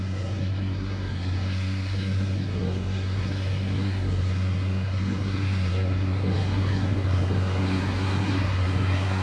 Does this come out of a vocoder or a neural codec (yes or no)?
yes